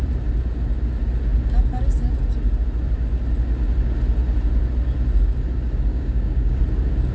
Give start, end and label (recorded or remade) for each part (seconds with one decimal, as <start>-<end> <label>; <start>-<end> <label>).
0.0-5.9 recorded; 5.9-6.6 remade; 6.6-7.1 recorded